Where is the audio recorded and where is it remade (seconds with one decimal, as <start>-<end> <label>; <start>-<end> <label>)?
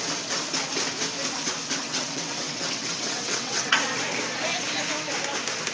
0.0-1.8 recorded; 1.8-3.8 remade; 3.8-5.7 recorded